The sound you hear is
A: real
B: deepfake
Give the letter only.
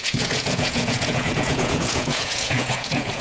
B